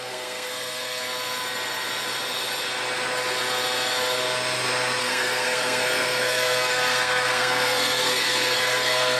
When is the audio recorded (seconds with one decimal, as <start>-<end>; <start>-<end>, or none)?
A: 1.0-5.0